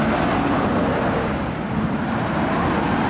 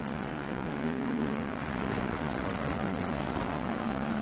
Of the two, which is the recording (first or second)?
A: first